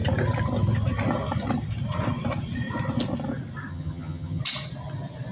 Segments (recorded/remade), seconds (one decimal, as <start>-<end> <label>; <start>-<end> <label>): 0.0-3.7 recorded; 3.7-4.4 remade; 4.4-5.3 recorded